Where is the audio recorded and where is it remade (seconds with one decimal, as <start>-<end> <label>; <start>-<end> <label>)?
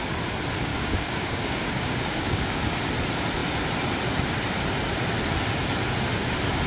0.0-0.7 recorded; 0.7-2.8 remade; 2.8-6.7 recorded